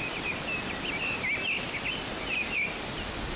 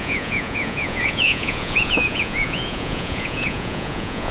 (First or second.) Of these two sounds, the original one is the first